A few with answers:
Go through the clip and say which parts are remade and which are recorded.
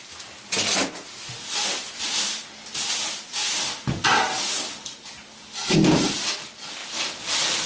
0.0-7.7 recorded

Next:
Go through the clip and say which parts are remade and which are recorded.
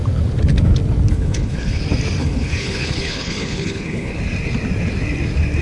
0.0-1.1 recorded; 1.1-1.8 remade; 1.8-2.2 recorded; 2.2-4.2 remade; 4.2-5.6 recorded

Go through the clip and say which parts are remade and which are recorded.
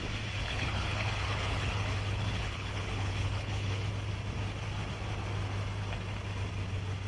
0.0-0.4 recorded; 0.4-3.9 remade; 3.9-7.1 recorded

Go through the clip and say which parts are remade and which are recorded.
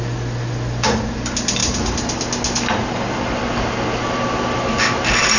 0.0-5.4 recorded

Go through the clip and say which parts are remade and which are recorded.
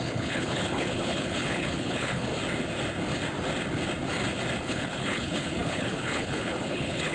0.0-2.3 remade; 2.3-4.6 recorded; 4.6-7.1 remade